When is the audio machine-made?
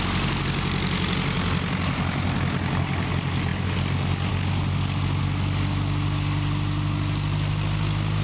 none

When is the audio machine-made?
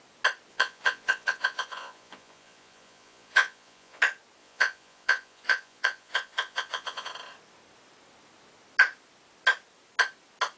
0.5-4.0 (vocoder, Vocos); 4.4-7.1